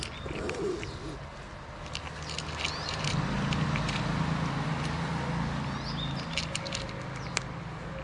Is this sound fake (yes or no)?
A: no